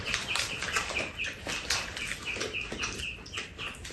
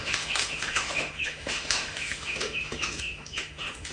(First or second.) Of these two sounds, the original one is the first